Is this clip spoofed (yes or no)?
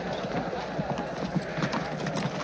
no